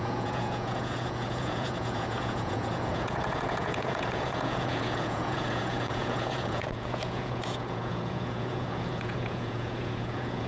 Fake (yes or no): yes